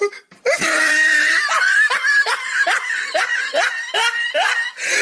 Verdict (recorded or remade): remade